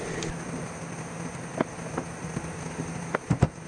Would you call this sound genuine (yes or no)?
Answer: yes